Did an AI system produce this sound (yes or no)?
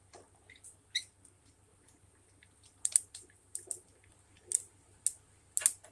no